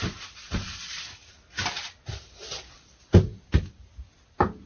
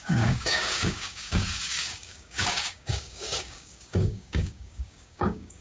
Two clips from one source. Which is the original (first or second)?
first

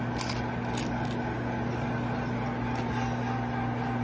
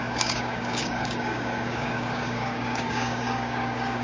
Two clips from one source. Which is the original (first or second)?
first